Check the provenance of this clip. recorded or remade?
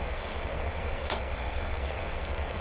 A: remade